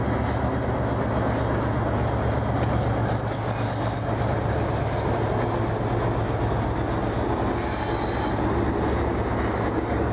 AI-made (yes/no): no